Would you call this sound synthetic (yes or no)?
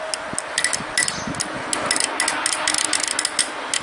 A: no